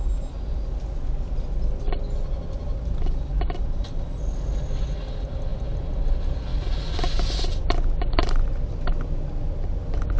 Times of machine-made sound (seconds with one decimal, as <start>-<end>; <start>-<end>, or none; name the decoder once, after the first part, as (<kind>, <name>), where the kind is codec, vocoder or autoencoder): none